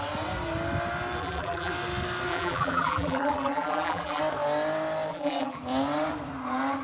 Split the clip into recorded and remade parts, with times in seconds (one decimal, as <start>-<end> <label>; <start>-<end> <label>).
0.0-1.2 recorded; 1.2-1.7 remade; 1.7-2.3 recorded; 2.3-4.2 remade; 4.2-5.1 recorded; 5.1-5.6 remade; 5.6-6.8 recorded